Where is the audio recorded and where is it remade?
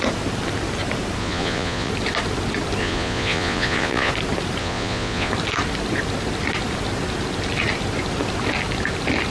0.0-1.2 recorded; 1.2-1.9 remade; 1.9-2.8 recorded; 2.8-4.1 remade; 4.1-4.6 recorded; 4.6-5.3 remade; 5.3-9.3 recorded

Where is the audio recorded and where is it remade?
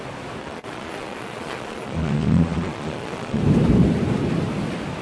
0.0-0.4 recorded; 0.4-3.4 remade; 3.4-5.0 recorded